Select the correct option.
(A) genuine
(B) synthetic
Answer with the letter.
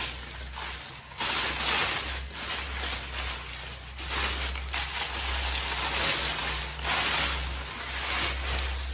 A